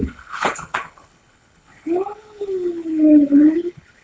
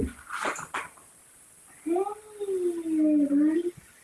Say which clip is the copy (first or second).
first